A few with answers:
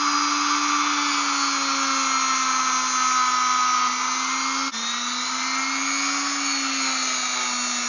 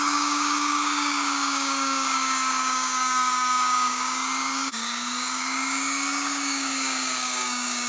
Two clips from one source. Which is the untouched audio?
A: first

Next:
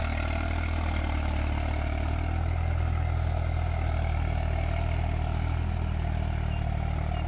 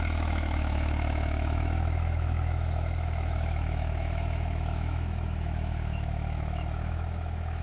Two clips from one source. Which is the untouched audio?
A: first